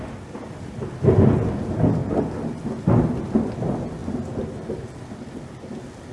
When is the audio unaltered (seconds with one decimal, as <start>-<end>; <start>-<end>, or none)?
0.0-6.1